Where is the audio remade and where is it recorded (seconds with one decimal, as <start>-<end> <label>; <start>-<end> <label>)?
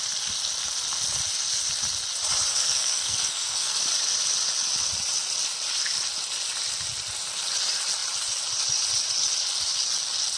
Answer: 0.0-2.5 recorded; 2.5-3.8 remade; 3.8-10.4 recorded